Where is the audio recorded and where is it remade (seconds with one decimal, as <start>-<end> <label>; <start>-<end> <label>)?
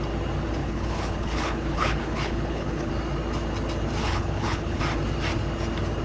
0.0-0.6 recorded; 0.6-2.9 remade; 2.9-4.0 recorded; 4.0-4.8 remade; 4.8-6.0 recorded